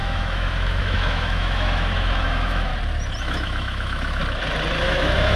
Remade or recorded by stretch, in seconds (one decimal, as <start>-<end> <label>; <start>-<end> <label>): 0.0-2.7 remade; 2.7-3.2 recorded; 3.2-4.2 remade; 4.2-4.8 recorded; 4.8-5.4 remade